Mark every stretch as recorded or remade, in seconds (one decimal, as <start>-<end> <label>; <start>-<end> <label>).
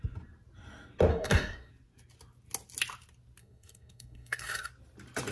0.0-1.1 recorded; 1.1-1.7 remade; 1.7-3.4 recorded; 3.4-4.7 remade; 4.7-5.3 recorded